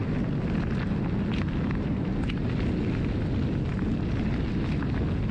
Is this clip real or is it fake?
real